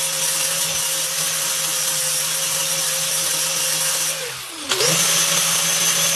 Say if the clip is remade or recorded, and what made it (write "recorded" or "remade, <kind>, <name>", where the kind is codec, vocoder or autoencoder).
recorded